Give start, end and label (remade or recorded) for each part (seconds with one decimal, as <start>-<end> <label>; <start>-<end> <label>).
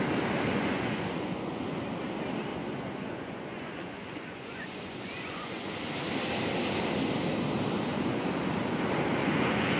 0.0-0.5 recorded; 0.5-1.8 remade; 1.8-2.5 recorded; 2.5-5.7 remade; 5.7-7.9 recorded; 7.9-8.4 remade; 8.4-9.2 recorded; 9.2-9.8 remade